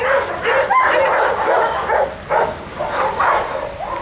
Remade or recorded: recorded